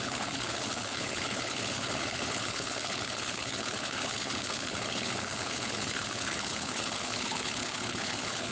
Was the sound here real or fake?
fake